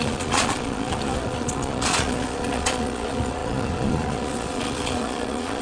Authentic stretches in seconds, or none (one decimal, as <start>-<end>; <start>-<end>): none